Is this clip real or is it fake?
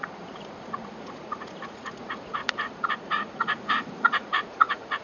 fake